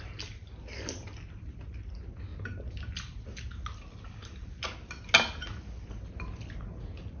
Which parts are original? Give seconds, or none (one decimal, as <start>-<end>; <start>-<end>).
0.0-7.2